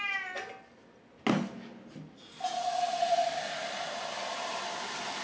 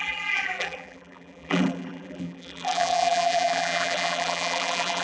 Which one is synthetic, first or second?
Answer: second